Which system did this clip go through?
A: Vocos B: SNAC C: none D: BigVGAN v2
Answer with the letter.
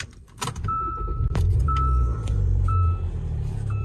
D